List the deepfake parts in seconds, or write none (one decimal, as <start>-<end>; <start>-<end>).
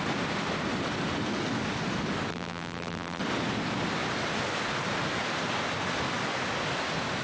2.3-3.2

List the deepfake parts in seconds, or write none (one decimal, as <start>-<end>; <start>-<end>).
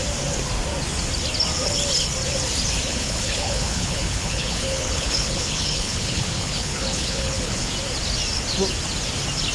2.9-7.7